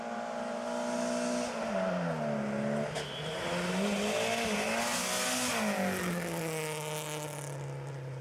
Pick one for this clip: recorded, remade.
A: recorded